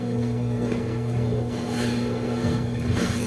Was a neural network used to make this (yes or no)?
yes